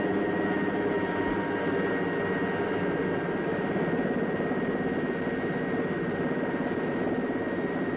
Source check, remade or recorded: recorded